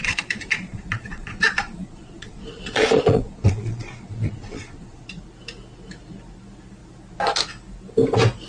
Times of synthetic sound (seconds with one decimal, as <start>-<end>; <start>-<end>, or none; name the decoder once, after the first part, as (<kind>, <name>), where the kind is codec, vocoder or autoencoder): 0.0-5.1 (vocoder, Vocos)